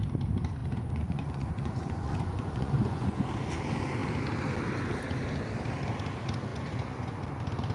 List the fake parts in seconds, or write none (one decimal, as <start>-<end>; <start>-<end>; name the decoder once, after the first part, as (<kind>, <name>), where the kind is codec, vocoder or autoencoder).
0.6-3.2 (vocoder, Vocos); 6.5-7.1